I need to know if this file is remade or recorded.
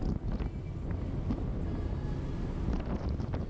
recorded